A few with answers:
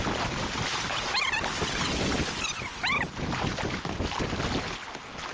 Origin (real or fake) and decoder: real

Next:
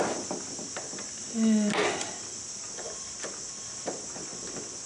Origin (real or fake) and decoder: real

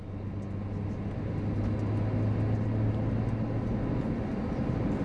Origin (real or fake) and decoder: real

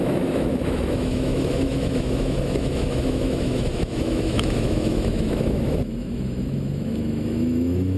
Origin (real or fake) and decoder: fake, autoencoder, DAC-VAE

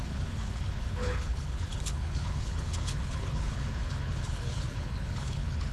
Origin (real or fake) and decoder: fake, codec, HILCodec